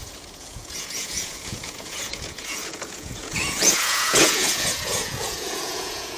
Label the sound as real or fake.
fake